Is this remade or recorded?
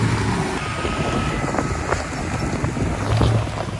recorded